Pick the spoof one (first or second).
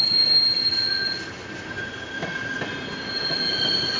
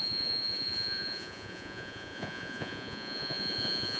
second